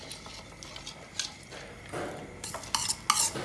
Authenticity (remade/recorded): recorded